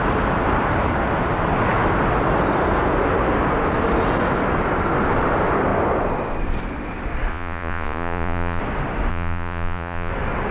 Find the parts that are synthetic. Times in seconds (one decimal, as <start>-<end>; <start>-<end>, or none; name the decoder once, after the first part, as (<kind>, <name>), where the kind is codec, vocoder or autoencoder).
7.3-8.6 (vocoder, Vocos); 9.1-10.1